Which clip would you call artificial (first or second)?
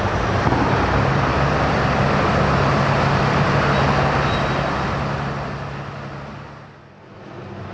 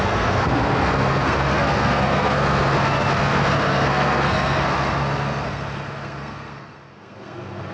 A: second